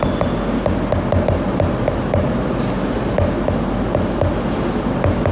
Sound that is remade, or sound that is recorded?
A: recorded